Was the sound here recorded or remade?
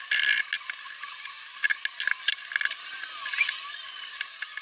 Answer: recorded